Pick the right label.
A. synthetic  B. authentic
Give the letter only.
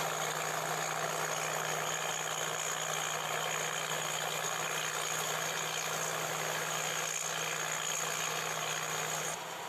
B